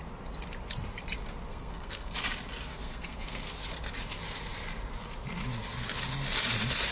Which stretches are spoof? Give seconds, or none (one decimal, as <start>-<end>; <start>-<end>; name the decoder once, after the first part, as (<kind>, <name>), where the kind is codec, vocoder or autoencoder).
1.5-2.1 (codec, SNAC); 2.7-3.5